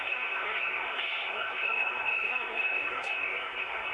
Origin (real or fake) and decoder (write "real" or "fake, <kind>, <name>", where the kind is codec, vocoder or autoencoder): fake, codec, SNAC